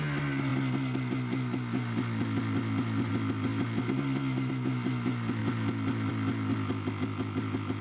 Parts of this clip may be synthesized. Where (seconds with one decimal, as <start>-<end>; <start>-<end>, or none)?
none